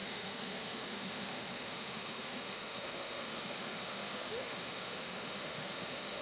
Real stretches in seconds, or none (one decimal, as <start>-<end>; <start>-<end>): none